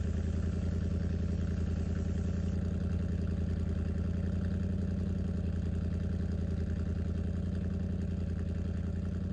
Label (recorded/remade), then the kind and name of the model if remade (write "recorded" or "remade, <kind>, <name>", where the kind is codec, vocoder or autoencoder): recorded